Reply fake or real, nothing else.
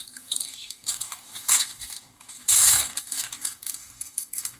fake